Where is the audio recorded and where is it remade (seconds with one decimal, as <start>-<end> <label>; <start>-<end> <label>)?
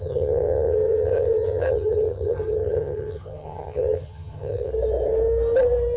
0.0-4.7 remade; 4.7-6.0 recorded